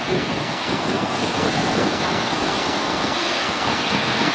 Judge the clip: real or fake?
fake